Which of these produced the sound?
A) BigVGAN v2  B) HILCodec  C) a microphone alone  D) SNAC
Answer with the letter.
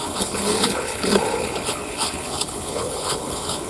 B